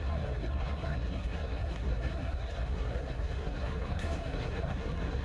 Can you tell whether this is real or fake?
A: fake